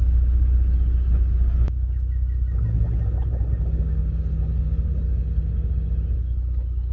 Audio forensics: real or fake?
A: real